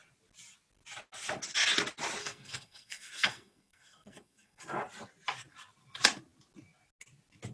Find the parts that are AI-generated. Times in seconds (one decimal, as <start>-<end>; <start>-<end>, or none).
2.2-4.6